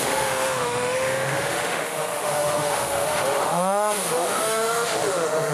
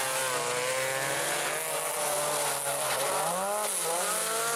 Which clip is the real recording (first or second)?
second